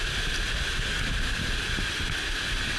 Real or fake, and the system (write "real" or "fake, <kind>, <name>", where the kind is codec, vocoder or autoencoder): real